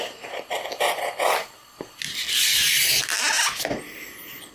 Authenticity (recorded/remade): recorded